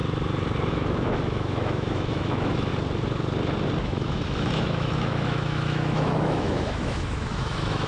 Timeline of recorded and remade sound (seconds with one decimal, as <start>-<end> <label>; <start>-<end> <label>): 0.0-0.7 recorded; 0.7-2.7 remade; 2.7-3.8 recorded; 3.8-7.9 remade